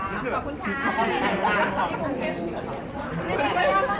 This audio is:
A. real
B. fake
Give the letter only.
B